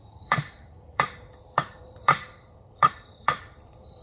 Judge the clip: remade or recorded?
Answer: remade